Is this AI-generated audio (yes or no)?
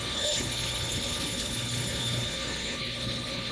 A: yes